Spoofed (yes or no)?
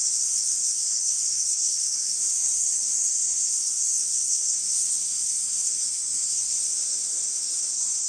yes